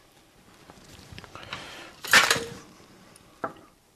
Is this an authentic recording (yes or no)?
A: no